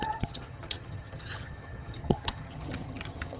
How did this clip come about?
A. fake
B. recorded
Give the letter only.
A